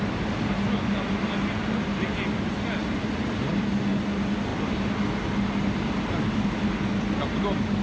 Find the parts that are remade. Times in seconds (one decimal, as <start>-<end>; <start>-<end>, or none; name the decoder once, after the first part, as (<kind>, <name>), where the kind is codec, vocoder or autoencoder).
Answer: none